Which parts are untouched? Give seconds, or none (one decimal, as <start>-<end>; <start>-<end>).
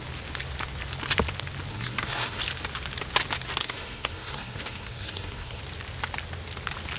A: 0.0-1.7; 2.4-3.6; 5.6-7.0